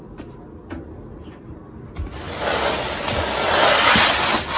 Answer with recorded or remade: recorded